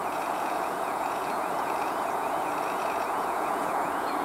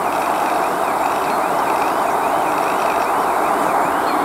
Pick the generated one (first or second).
first